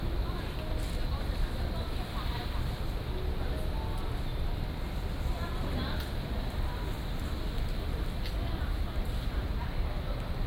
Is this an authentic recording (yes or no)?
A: yes